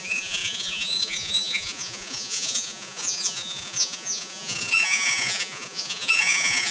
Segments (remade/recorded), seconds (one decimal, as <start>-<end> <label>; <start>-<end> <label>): 0.0-6.7 remade